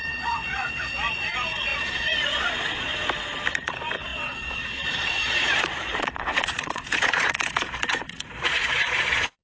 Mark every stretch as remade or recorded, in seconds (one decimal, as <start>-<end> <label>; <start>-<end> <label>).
0.0-2.9 remade; 2.9-3.5 recorded; 3.5-9.4 remade